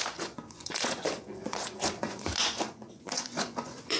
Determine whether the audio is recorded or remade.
remade